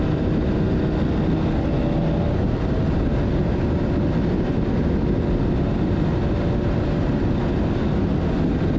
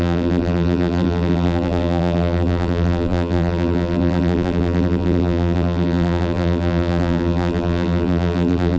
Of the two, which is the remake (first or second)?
second